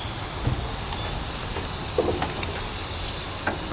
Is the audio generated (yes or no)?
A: no